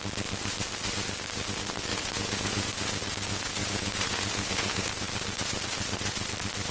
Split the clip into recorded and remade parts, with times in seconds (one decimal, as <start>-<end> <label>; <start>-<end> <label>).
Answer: 0.0-1.9 recorded; 1.9-2.7 remade; 2.7-3.6 recorded; 3.6-4.9 remade; 4.9-6.7 recorded

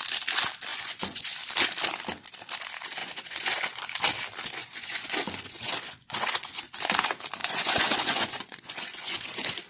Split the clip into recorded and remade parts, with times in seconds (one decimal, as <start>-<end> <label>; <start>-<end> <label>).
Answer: 0.0-0.7 recorded; 0.7-1.3 remade; 1.3-3.0 recorded; 3.0-3.9 remade; 3.9-4.6 recorded; 4.6-6.7 remade; 6.7-7.4 recorded; 7.4-9.7 remade

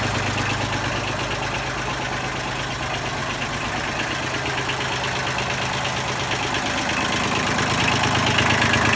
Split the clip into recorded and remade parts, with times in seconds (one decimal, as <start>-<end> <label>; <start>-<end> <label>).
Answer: 0.0-9.0 recorded

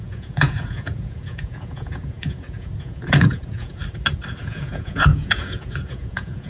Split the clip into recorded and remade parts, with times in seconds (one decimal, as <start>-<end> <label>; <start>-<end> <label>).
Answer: 0.0-3.8 remade; 3.8-4.4 recorded; 4.4-6.5 remade

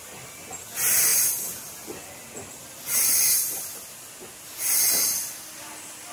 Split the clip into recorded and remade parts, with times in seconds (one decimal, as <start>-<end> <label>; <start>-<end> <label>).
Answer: 0.0-6.1 recorded

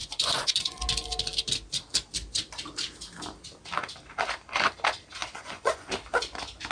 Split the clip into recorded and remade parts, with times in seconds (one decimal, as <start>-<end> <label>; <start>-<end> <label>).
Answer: 0.0-0.8 remade; 0.8-5.2 recorded; 5.2-5.9 remade; 5.9-6.7 recorded

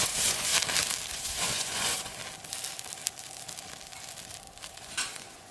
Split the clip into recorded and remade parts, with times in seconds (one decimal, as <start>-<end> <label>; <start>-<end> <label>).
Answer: 0.0-0.5 remade; 0.5-1.1 recorded; 1.1-2.2 remade; 2.2-4.7 recorded; 4.7-5.5 remade

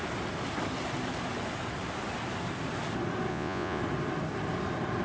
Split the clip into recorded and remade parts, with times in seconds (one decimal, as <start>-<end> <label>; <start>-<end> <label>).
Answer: 0.0-3.3 recorded; 3.3-3.8 remade; 3.8-5.0 recorded